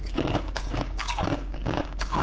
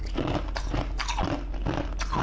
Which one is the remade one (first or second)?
first